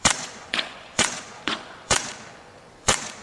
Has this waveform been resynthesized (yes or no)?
yes